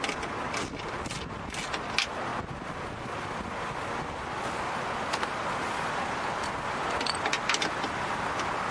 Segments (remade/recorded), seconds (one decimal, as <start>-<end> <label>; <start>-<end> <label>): 0.0-8.7 recorded